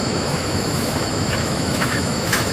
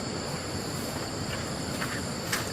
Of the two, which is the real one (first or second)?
second